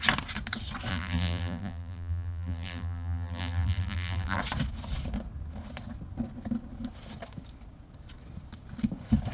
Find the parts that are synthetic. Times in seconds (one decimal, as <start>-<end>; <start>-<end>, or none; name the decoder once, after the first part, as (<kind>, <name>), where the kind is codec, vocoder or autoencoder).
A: 0.9-4.4 (vocoder, BigVGAN v2)